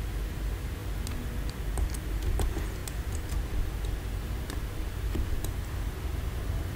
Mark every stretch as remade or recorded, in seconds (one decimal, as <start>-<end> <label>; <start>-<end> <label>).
0.0-6.8 recorded